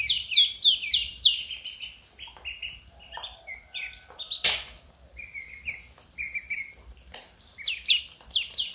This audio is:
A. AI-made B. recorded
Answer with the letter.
A